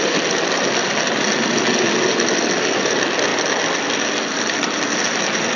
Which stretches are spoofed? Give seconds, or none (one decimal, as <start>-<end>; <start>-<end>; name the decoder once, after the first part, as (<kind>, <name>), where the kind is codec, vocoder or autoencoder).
none

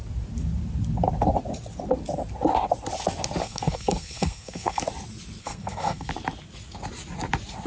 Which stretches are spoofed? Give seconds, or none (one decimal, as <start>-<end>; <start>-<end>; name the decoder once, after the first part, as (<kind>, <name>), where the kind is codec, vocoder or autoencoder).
3.4-4.8 (codec, SNAC); 5.4-6.1